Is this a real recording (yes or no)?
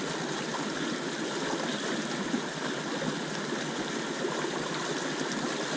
yes